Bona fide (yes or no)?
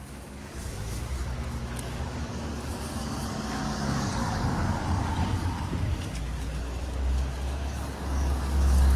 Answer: no